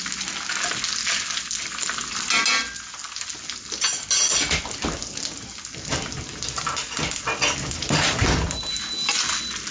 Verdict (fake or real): real